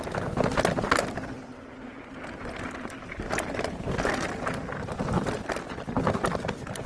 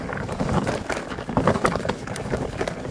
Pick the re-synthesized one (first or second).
second